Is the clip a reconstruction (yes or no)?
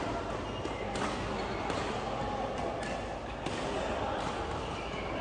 no